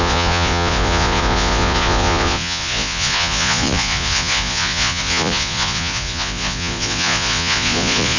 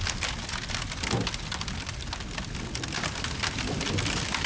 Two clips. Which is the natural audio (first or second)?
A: second